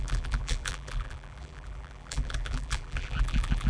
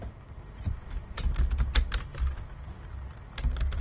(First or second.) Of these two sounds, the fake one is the first